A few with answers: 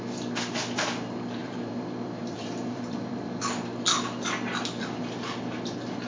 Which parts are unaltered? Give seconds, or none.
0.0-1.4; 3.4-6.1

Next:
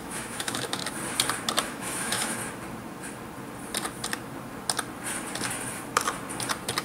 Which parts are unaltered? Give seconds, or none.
0.8-1.7; 2.4-6.8